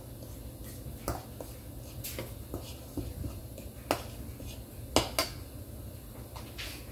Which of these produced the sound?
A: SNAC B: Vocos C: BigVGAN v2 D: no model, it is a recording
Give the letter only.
D